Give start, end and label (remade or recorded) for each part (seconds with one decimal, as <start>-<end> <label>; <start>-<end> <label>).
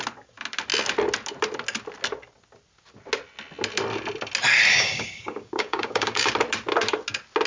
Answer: 0.0-4.7 recorded; 4.7-6.3 remade; 6.3-7.5 recorded